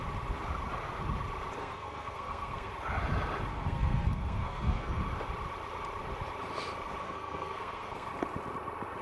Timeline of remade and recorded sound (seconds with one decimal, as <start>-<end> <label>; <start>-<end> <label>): 0.0-1.6 recorded; 1.6-2.7 remade; 2.7-3.5 recorded; 3.5-5.0 remade; 5.0-7.0 recorded; 7.0-8.1 remade; 8.1-9.0 recorded